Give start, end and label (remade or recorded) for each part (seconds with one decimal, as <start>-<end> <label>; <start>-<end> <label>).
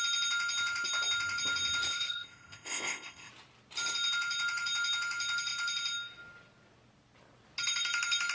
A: 0.0-1.9 recorded; 1.9-3.3 remade; 3.3-8.3 recorded